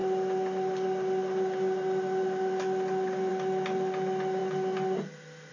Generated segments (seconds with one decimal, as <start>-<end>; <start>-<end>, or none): none